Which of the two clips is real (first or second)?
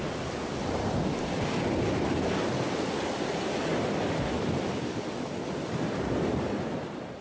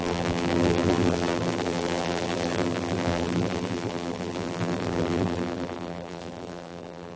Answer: first